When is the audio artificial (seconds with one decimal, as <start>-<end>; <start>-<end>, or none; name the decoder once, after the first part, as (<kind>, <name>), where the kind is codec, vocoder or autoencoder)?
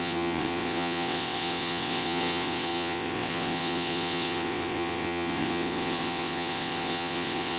0.0-7.6 (vocoder, WaveNeXt)